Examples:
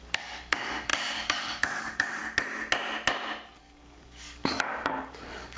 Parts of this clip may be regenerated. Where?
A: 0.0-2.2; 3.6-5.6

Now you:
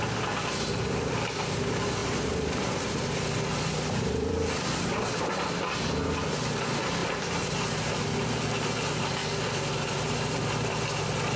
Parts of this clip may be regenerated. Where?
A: 2.0-5.6; 9.2-11.0